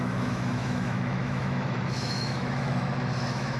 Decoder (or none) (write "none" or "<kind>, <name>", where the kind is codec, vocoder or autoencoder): autoencoder, DAC-VAE